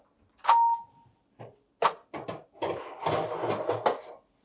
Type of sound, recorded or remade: recorded